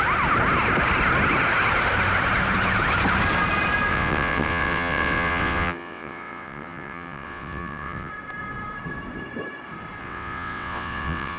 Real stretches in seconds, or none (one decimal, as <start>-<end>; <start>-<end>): 0.0-3.9; 8.1-10.0